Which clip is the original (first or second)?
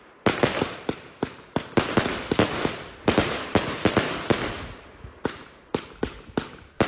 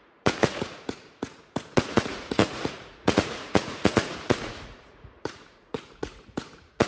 first